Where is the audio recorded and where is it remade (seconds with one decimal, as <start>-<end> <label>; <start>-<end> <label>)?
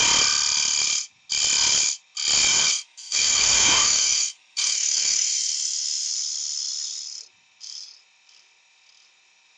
0.0-2.5 recorded; 2.5-6.1 remade; 6.1-9.6 recorded